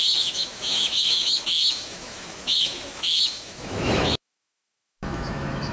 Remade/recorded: remade